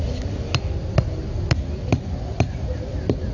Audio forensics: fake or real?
real